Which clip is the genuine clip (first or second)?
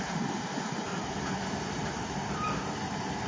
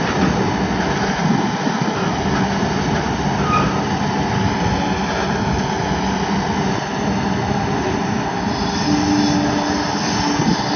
second